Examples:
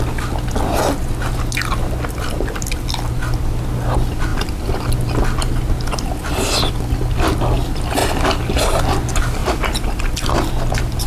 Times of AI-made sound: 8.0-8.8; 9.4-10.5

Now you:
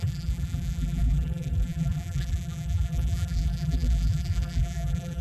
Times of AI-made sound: 0.0-5.2